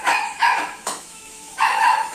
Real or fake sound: fake